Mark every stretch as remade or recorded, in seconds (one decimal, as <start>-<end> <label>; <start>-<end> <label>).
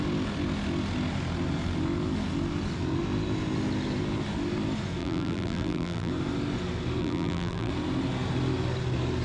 0.0-5.0 recorded; 5.0-6.1 remade; 6.1-7.0 recorded; 7.0-7.7 remade; 7.7-9.2 recorded